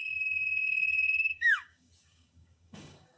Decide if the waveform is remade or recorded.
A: remade